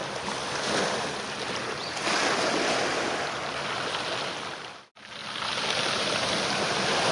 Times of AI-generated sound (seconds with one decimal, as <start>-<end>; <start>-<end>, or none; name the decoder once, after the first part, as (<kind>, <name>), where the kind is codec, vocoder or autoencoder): none